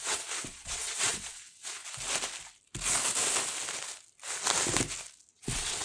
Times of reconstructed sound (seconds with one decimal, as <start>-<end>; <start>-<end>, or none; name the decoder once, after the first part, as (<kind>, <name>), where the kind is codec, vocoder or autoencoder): 0.0-1.8 (vocoder, WaveNeXt); 5.3-5.8